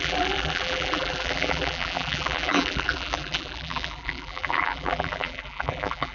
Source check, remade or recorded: remade